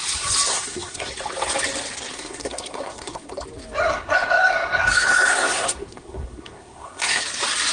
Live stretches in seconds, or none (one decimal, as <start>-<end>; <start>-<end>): 0.0-0.5; 1.1-2.1; 3.3-3.9; 7.2-7.7